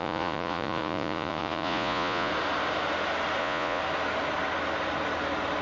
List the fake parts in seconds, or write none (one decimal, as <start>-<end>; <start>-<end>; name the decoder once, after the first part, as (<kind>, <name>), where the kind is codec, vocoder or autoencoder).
0.0-2.3 (vocoder, Vocos); 3.4-3.8